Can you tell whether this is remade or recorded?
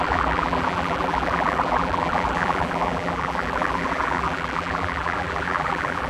remade